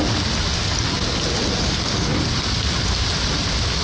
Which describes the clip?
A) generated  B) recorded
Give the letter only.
B